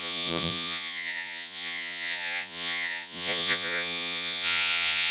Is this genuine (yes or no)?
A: no